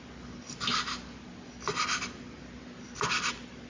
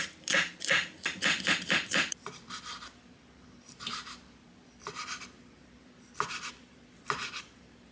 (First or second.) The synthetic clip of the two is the second